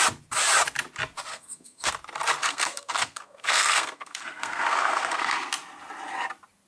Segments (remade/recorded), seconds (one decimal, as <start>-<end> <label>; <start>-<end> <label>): 0.0-1.3 recorded; 1.3-1.9 remade; 1.9-2.4 recorded; 2.4-5.5 remade; 5.5-6.7 recorded